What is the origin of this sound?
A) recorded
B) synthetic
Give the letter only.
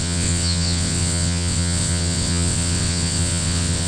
B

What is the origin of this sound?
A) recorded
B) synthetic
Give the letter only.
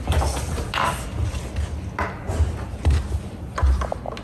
A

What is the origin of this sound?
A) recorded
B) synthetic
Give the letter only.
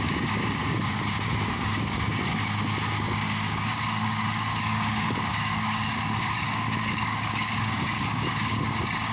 B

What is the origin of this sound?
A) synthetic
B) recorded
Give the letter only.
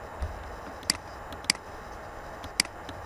B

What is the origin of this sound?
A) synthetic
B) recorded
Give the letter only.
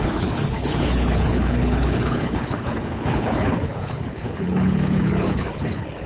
A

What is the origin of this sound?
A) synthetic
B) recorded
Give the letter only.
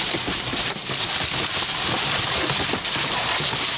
A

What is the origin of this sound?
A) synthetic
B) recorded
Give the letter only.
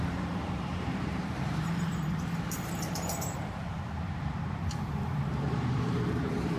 A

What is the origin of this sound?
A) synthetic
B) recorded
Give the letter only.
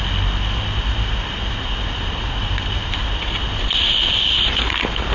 B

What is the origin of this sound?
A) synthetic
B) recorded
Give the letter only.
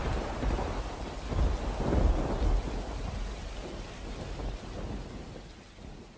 B